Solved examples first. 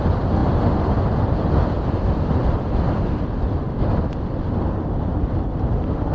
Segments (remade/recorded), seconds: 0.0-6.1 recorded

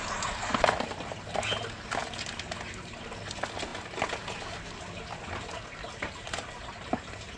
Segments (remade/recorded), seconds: 0.0-7.4 recorded

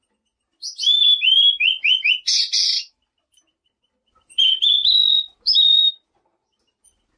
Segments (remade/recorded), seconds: 0.0-7.2 recorded

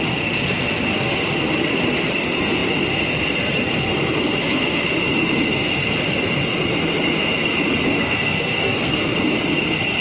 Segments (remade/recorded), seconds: 0.0-8.0 recorded; 8.0-9.0 remade; 9.0-10.0 recorded

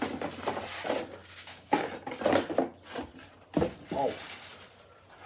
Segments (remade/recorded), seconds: 0.0-1.2 recorded; 1.2-1.9 remade; 1.9-5.3 recorded